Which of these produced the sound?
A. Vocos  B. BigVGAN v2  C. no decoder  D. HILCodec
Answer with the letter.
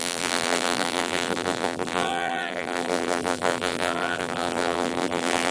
B